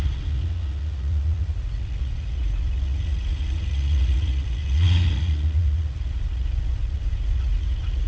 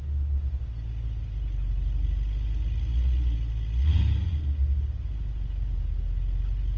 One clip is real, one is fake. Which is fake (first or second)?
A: first